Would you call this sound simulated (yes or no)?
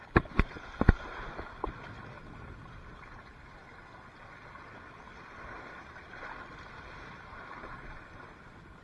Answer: no